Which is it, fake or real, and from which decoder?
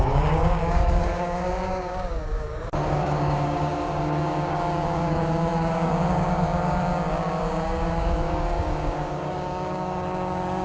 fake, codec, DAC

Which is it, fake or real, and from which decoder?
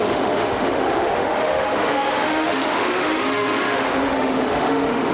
fake, autoencoder, DAC-VAE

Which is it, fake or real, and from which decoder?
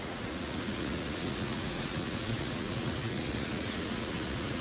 fake, vocoder, Vocos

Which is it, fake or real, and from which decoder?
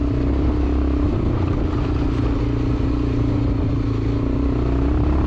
real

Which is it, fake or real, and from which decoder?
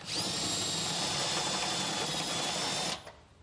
real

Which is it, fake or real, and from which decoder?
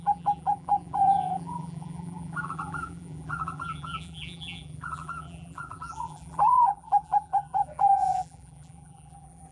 fake, vocoder, BigVGAN v2